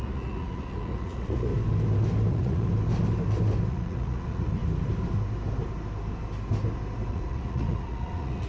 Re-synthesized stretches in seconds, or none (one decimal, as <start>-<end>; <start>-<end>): 0.0-1.5; 2.3-2.7; 3.7-4.6; 7.1-8.5